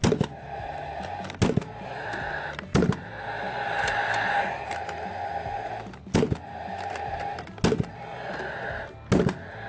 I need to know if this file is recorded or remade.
recorded